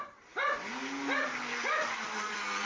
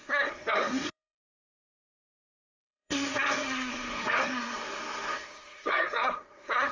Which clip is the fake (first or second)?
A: second